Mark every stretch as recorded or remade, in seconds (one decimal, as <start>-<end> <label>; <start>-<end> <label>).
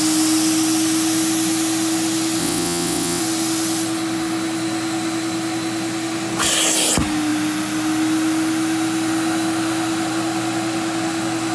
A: 0.0-2.4 recorded; 2.4-3.2 remade; 3.2-11.5 recorded